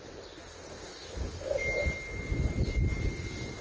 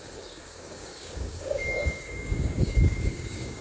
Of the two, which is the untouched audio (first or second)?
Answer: first